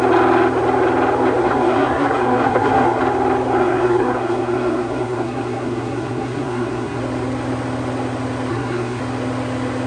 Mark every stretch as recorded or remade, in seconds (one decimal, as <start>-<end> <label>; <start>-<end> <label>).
0.0-1.4 recorded; 1.4-3.0 remade; 3.0-3.6 recorded; 3.6-7.0 remade; 7.0-8.5 recorded; 8.5-9.0 remade; 9.0-9.9 recorded